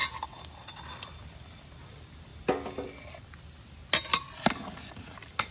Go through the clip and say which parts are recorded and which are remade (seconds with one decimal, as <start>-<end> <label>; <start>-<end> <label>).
0.0-5.5 recorded